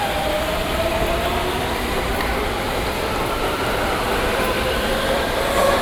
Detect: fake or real fake